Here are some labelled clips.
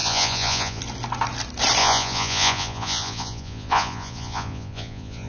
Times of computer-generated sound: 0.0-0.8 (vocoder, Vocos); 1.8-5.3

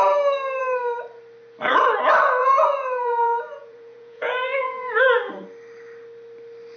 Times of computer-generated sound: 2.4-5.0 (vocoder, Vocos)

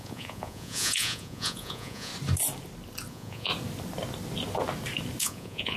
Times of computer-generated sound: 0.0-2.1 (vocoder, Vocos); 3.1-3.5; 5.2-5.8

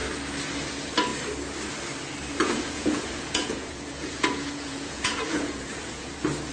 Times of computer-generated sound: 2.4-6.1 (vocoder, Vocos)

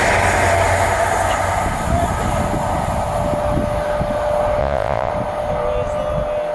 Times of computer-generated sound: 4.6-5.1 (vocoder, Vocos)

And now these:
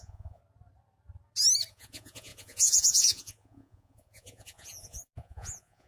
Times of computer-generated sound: 0.0-0.4 (vocoder, Vocos); 1.7-5.9

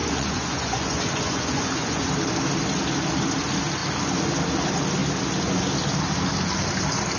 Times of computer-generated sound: 0.0-2.1 (vocoder, Vocos)